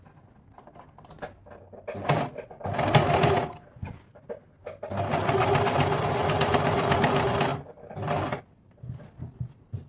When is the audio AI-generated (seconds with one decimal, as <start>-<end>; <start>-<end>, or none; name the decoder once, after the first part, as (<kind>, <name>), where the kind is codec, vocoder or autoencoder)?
none